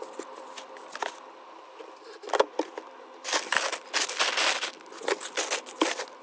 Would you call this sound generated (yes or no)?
no